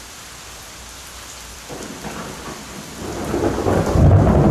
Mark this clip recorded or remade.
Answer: remade